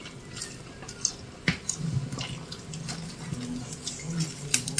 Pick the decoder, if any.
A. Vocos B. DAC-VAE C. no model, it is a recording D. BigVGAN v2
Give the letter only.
C